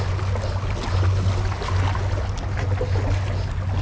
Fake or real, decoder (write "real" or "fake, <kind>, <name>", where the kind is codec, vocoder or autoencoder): real